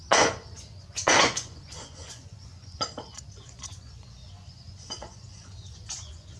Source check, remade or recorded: remade